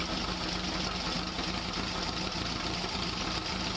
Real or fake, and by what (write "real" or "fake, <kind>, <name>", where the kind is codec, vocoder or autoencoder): real